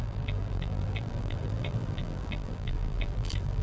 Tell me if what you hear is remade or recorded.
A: remade